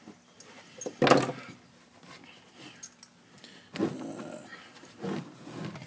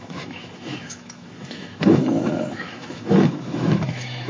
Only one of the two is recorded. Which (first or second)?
first